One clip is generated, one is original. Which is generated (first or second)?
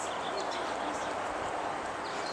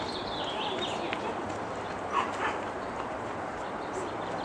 second